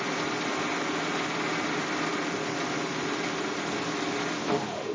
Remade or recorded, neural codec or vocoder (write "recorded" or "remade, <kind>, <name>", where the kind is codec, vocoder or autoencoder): recorded